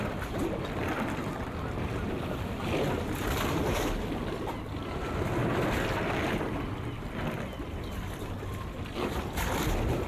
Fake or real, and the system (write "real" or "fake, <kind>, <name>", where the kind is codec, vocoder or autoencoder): real